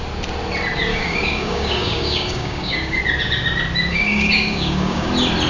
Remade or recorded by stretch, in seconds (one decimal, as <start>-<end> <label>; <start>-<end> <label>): 0.0-0.9 recorded; 0.9-3.0 remade; 3.0-3.9 recorded; 3.9-5.1 remade; 5.1-5.5 recorded